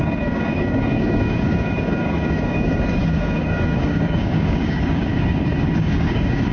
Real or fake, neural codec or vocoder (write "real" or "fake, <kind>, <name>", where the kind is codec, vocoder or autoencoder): fake, codec, DAC